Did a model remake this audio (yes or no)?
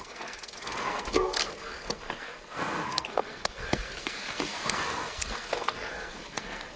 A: yes